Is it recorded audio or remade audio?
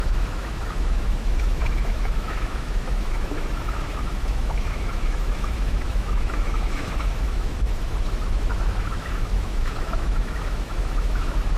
remade